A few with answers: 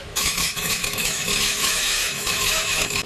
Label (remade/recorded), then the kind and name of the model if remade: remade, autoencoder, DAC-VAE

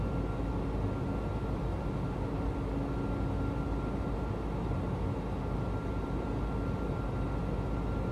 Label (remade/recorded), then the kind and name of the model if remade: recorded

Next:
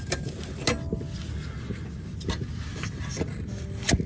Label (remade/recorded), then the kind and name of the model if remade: recorded